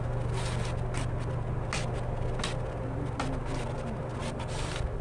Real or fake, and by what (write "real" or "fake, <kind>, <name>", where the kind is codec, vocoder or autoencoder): real